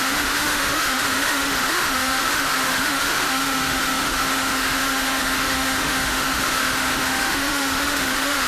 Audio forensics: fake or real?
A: fake